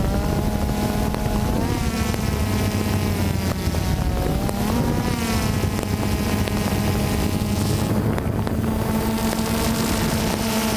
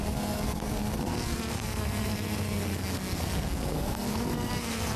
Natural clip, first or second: first